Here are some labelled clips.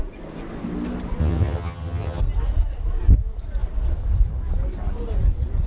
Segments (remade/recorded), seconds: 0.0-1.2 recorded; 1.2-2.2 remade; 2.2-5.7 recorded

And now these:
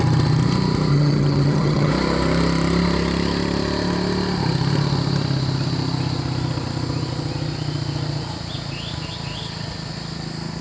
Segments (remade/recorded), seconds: 0.0-0.9 recorded; 0.9-1.9 remade; 1.9-10.6 recorded